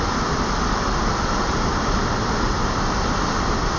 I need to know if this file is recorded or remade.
recorded